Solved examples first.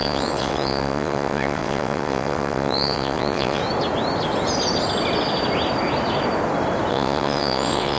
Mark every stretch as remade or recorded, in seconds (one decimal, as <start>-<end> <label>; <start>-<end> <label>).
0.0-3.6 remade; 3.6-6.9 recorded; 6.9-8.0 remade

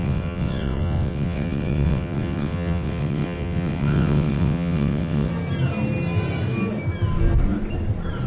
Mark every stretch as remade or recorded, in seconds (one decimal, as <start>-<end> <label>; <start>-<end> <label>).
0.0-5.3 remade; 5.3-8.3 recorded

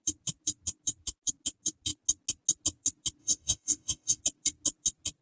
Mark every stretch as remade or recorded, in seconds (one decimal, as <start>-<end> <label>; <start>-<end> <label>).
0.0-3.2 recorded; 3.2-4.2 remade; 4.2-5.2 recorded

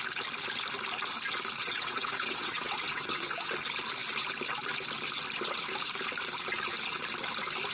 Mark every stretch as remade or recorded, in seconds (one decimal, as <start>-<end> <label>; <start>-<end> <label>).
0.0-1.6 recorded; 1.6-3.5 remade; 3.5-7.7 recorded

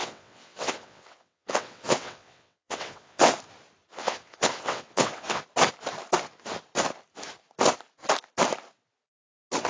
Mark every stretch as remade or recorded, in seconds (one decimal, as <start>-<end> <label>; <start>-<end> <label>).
0.0-3.3 remade; 3.3-3.9 recorded; 3.9-5.4 remade; 5.4-9.7 recorded